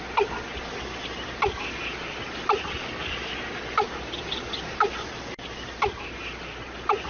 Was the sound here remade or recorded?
recorded